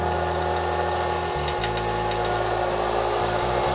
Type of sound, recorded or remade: recorded